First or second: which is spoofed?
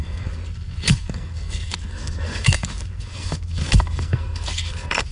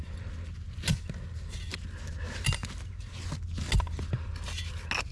first